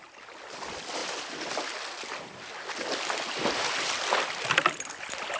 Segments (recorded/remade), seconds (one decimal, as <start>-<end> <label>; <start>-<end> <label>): 0.0-5.4 recorded